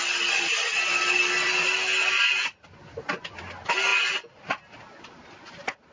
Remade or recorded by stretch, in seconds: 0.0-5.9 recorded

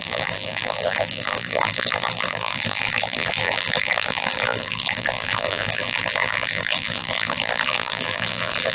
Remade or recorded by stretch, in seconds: 0.0-8.7 remade

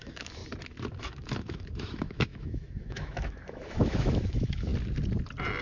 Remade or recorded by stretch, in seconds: 0.0-0.4 remade; 0.4-1.0 recorded; 1.0-4.7 remade; 4.7-5.6 recorded

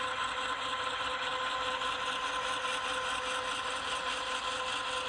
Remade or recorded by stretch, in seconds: 0.0-5.1 recorded